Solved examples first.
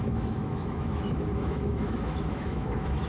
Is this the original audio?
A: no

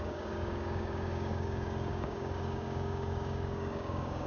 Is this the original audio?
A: no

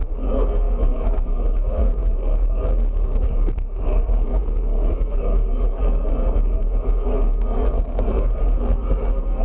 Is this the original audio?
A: no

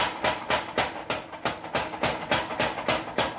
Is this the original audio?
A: yes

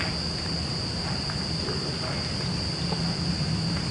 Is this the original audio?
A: yes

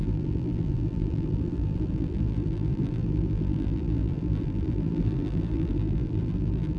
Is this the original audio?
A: no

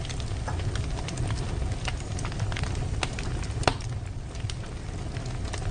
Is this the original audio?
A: yes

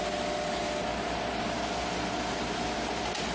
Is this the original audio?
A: yes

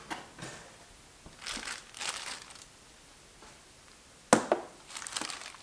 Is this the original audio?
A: yes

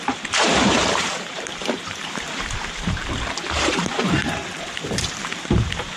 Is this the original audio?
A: no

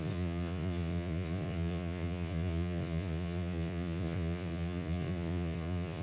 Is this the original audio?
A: no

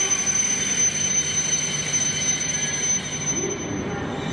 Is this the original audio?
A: yes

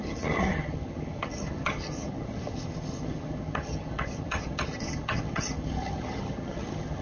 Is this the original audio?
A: no